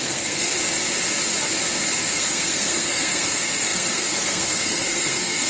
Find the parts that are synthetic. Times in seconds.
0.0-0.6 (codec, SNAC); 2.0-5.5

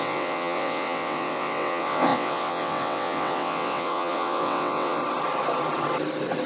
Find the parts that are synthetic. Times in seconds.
0.0-5.0 (vocoder, WaveNeXt)